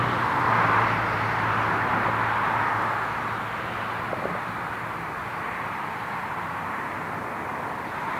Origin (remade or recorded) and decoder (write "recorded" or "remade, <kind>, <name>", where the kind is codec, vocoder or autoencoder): recorded